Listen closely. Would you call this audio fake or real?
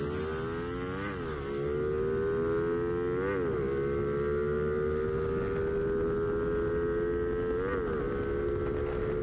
real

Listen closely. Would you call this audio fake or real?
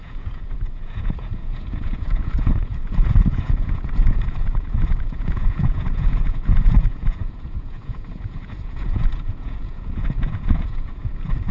fake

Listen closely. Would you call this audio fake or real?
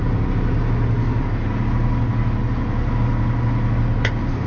real